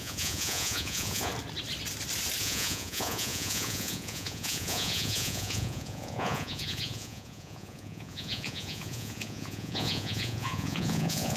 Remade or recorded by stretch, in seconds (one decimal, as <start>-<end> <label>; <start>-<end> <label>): 0.0-1.3 remade; 1.3-2.4 recorded; 2.4-11.4 remade